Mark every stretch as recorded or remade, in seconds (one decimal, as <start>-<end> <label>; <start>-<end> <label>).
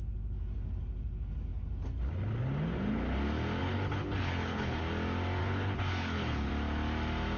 0.0-3.6 recorded; 3.6-4.8 remade; 4.8-5.4 recorded; 5.4-6.5 remade; 6.5-7.4 recorded